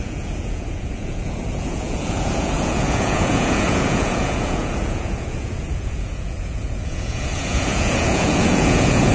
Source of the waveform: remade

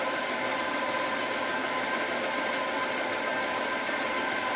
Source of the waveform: recorded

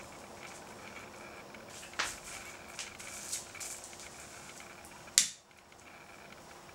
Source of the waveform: recorded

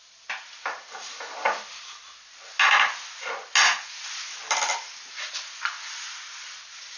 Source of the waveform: recorded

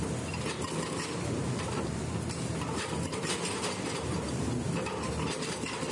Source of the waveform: recorded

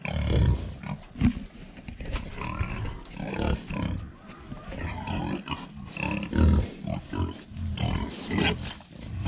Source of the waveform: recorded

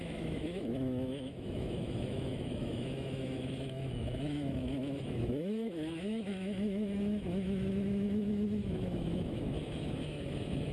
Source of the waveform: remade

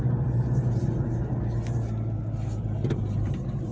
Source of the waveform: recorded